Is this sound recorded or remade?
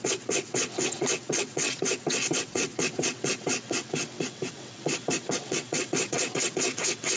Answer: remade